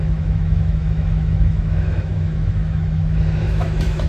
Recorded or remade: remade